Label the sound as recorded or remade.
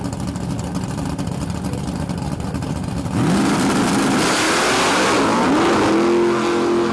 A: recorded